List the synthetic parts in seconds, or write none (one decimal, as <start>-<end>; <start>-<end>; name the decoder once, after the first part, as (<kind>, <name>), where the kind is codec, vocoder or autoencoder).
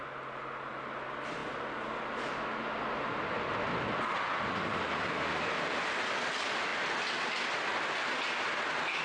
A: none